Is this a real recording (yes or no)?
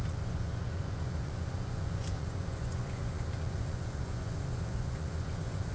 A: no